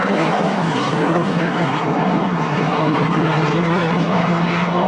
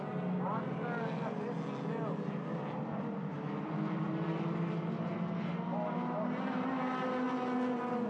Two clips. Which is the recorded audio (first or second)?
second